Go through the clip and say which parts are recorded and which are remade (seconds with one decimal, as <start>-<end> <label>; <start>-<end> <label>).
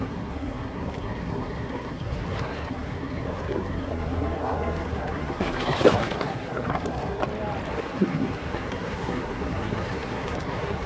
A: 0.0-7.2 remade; 7.2-7.7 recorded; 7.7-10.9 remade